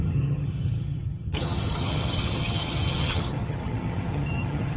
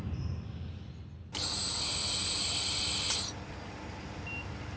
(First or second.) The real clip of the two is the second